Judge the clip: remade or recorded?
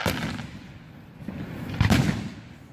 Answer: recorded